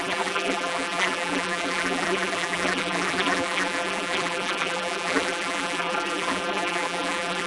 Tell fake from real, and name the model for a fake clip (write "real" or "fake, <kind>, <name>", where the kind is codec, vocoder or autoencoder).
fake, vocoder, BigVGAN v2